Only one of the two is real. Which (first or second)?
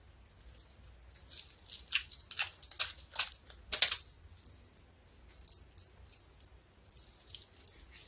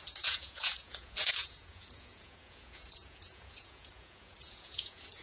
first